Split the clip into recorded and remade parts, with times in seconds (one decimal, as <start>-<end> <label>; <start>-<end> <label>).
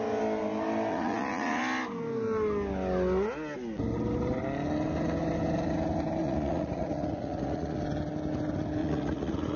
0.0-0.9 recorded; 0.9-1.6 remade; 1.6-6.2 recorded; 6.2-7.8 remade; 7.8-8.8 recorded; 8.8-9.6 remade